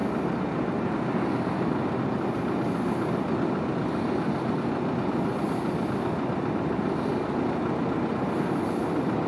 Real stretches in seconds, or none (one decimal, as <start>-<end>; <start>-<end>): 0.0-9.3